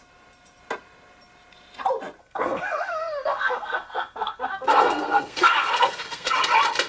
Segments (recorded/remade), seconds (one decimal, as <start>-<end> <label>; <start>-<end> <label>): 0.0-2.2 recorded; 2.2-6.3 remade; 6.3-6.9 recorded